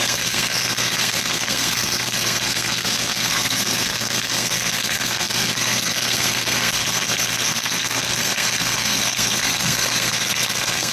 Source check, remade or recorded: remade